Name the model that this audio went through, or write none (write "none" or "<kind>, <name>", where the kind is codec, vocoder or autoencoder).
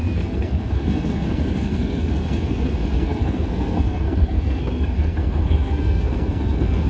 codec, SNAC